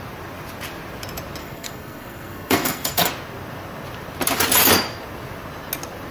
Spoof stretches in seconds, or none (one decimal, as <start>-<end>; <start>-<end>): 1.4-3.1